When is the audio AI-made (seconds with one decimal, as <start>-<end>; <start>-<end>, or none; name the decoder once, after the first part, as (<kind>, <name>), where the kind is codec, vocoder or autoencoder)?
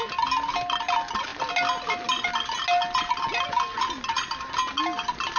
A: none